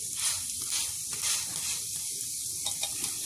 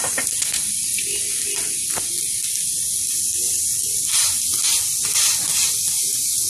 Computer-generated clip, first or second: first